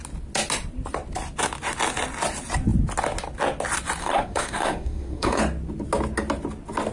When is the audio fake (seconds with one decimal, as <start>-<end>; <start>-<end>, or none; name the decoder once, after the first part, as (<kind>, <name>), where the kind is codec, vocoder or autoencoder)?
4.0-5.4 (codec, SNAC)